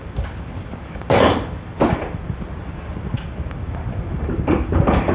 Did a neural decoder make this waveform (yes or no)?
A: no